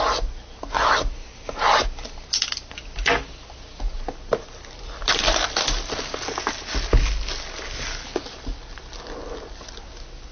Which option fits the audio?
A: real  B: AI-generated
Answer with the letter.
A